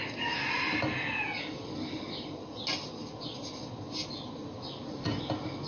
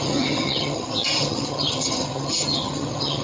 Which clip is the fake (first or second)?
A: second